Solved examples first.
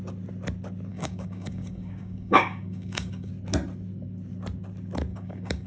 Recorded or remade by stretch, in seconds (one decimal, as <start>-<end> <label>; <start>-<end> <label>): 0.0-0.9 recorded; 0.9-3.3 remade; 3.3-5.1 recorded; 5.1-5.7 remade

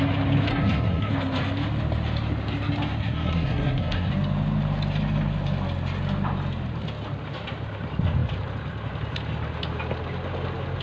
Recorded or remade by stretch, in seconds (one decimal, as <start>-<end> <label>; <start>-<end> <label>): 0.0-0.5 recorded; 0.5-1.1 remade; 1.1-3.0 recorded; 3.0-4.1 remade; 4.1-10.8 recorded

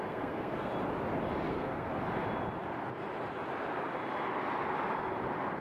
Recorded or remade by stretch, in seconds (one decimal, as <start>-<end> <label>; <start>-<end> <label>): 0.0-0.7 remade; 0.7-1.5 recorded; 1.5-1.9 remade; 1.9-5.6 recorded

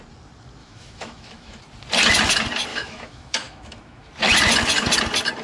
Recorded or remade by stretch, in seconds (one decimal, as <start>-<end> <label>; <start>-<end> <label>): 0.0-0.6 recorded; 0.6-1.6 remade; 1.6-2.7 recorded; 2.7-4.1 remade; 4.1-5.4 recorded